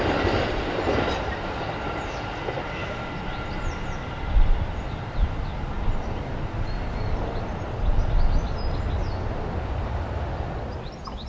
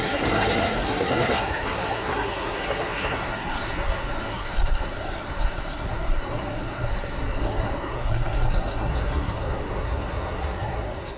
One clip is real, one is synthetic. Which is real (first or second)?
first